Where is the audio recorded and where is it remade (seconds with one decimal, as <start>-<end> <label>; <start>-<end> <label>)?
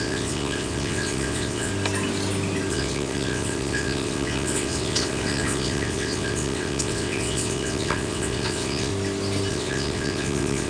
0.0-1.7 remade; 1.7-2.7 recorded; 2.7-8.9 remade; 8.9-9.5 recorded; 9.5-10.7 remade